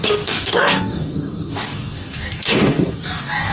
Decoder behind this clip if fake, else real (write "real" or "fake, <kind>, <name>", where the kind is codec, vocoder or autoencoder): fake, codec, DAC